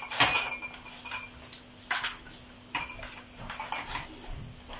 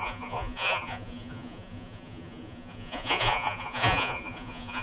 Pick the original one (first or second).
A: first